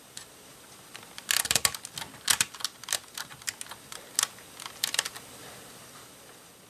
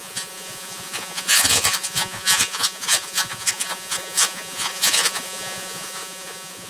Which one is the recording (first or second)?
first